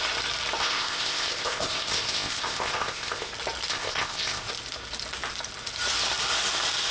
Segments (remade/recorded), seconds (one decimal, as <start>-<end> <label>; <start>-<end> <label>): 0.0-0.6 recorded; 0.6-3.3 remade; 3.3-3.7 recorded; 3.7-4.5 remade; 4.5-6.9 recorded